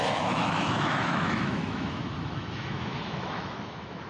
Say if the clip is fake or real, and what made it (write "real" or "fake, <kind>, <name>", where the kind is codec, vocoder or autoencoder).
fake, autoencoder, DAC-VAE